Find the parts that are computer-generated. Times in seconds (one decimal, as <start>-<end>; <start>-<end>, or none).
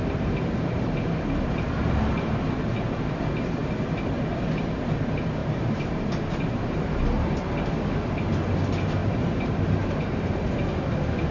0.0-2.4; 5.4-7.0; 9.0-10.5